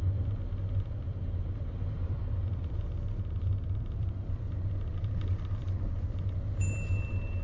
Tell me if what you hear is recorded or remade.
remade